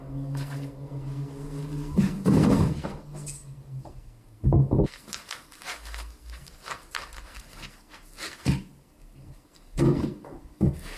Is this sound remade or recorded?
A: remade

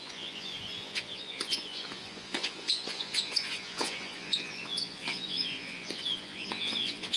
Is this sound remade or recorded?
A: remade